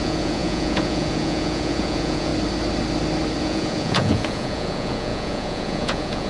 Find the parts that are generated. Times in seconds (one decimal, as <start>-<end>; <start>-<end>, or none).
0.0-2.3; 3.4-6.3